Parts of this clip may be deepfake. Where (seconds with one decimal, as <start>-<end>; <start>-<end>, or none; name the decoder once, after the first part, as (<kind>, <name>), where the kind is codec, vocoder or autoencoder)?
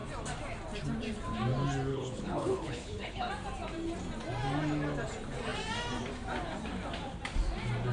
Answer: 1.9-3.3 (codec, HILCodec)